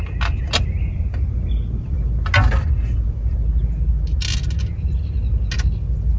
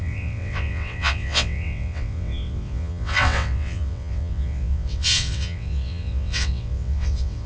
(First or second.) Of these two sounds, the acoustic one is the first